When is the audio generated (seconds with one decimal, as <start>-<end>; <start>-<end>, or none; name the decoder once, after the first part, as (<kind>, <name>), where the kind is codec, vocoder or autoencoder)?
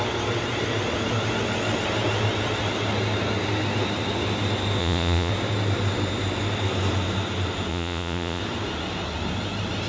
4.8-5.3 (vocoder, Vocos); 7.7-8.4